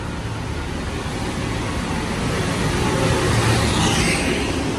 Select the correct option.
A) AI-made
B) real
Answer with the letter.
B